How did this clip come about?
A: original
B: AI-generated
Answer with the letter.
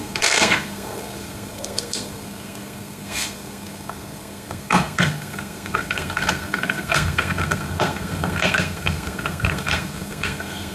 B